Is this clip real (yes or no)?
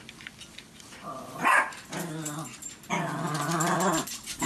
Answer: yes